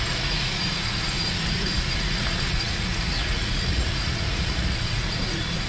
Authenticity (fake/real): fake